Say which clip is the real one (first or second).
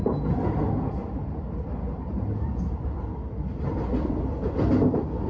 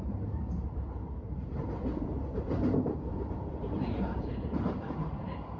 first